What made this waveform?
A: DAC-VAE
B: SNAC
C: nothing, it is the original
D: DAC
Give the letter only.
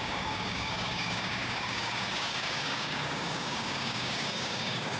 D